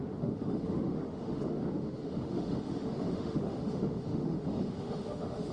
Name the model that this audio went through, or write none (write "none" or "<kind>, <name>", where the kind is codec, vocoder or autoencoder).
autoencoder, DAC-VAE